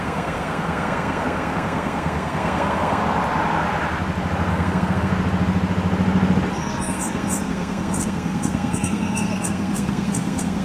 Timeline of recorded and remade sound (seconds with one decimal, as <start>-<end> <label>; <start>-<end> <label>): 0.0-3.0 remade; 3.0-4.5 recorded; 4.5-5.1 remade; 5.1-6.5 recorded; 6.5-10.6 remade